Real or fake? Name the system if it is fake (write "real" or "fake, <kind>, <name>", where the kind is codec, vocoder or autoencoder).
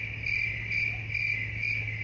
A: real